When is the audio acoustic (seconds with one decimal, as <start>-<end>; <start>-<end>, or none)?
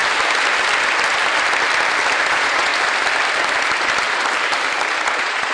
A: 0.0-2.3; 2.7-5.1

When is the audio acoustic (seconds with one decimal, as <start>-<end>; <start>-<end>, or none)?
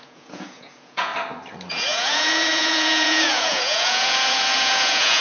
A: 1.1-1.7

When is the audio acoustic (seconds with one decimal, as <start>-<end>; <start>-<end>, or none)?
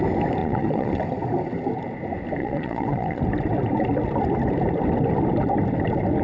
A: 0.0-0.4; 1.0-2.4; 3.2-6.2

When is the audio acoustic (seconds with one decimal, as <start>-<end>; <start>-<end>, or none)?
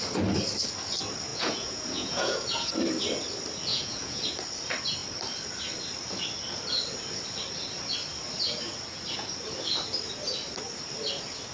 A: 0.0-1.3; 2.7-3.7; 4.2-11.5